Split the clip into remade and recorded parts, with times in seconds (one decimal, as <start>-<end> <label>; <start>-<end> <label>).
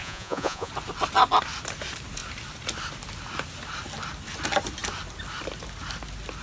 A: 0.0-0.7 remade; 0.7-6.4 recorded